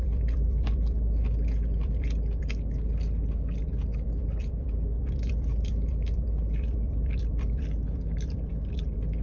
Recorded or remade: remade